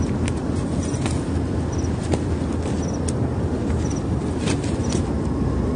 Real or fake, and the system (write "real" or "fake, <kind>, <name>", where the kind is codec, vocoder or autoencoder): real